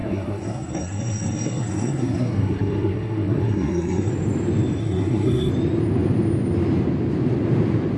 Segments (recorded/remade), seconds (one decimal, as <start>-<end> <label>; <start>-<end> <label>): 0.0-4.1 remade; 4.1-4.8 recorded; 4.8-5.5 remade; 5.5-8.0 recorded